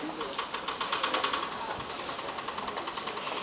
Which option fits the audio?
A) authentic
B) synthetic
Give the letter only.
A